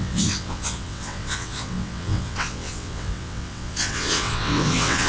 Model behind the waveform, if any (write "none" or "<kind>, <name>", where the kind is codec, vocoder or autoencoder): vocoder, WaveNeXt